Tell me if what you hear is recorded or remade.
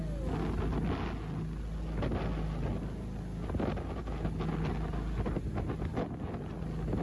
recorded